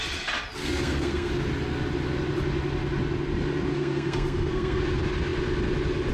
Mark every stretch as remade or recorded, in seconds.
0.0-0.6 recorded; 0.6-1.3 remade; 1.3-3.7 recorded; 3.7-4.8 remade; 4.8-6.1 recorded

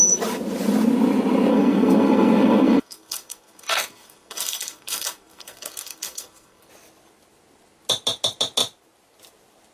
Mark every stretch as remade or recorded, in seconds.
0.0-1.5 recorded; 1.5-6.7 remade; 6.7-9.7 recorded

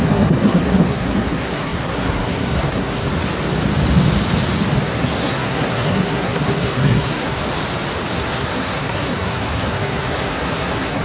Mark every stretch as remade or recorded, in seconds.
0.0-3.1 remade; 3.1-4.8 recorded; 4.8-7.4 remade; 7.4-8.1 recorded; 8.1-11.0 remade

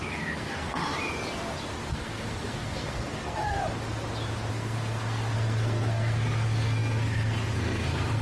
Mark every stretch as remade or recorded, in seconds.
0.0-0.8 remade; 0.8-1.9 recorded; 1.9-3.6 remade; 3.6-4.5 recorded; 4.5-8.2 remade

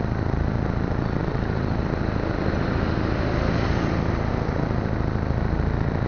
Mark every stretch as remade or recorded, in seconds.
0.0-6.1 recorded